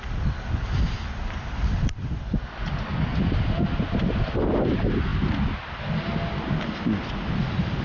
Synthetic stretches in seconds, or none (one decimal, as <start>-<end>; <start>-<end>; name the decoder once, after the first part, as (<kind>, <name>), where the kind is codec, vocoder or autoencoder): none